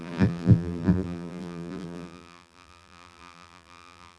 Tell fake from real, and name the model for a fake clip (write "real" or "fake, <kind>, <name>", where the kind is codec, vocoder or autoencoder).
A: fake, vocoder, BigVGAN v2